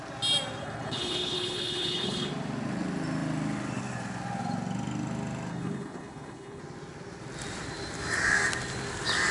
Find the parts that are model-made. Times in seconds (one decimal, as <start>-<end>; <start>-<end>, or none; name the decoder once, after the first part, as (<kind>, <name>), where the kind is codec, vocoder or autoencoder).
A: 0.6-2.3 (codec, HILCodec); 5.5-6.6

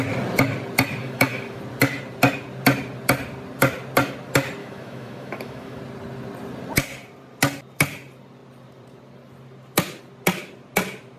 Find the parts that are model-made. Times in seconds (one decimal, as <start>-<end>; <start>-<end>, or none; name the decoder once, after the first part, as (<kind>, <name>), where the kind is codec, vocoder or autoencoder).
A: 1.0-1.6 (autoencoder, DAC-VAE); 4.6-5.8